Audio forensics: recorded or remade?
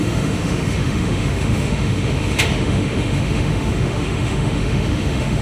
remade